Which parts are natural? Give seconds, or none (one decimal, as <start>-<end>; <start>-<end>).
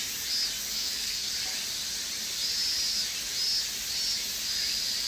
0.0-0.7; 1.3-5.1